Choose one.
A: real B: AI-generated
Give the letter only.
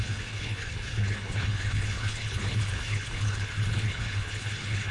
B